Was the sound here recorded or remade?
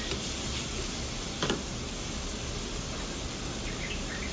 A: recorded